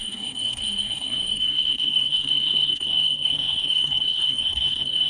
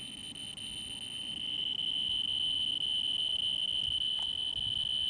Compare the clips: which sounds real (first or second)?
second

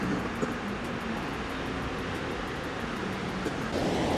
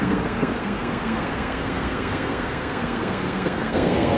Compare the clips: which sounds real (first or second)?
first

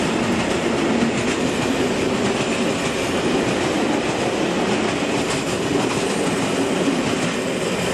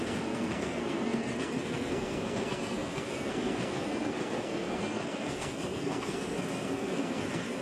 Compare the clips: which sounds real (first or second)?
first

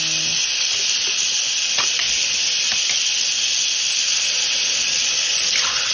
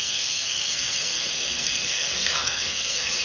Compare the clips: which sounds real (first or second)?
first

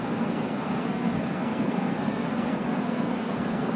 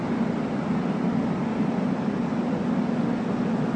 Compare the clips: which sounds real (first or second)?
second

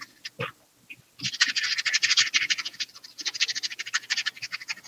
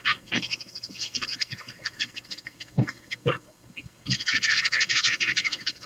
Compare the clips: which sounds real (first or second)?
first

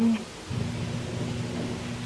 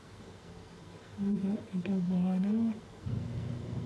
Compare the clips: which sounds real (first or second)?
first